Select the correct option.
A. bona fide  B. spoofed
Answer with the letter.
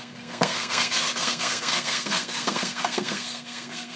B